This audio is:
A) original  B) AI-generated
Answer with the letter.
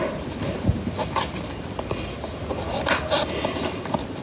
A